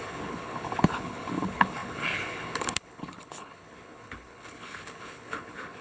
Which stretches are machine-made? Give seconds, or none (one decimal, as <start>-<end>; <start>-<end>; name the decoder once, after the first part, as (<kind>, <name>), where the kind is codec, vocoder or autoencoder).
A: 0.0-5.8 (codec, HILCodec)